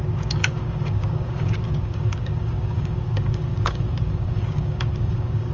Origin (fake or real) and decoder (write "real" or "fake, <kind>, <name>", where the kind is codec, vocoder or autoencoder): fake, codec, DAC